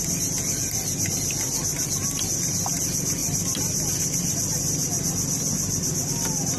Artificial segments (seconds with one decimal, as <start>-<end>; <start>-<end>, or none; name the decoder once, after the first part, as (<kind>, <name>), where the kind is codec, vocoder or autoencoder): none